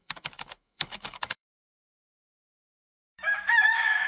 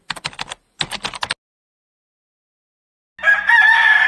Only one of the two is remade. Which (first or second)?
first